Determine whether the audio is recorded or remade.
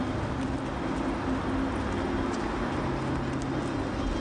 recorded